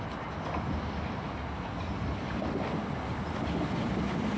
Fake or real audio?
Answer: real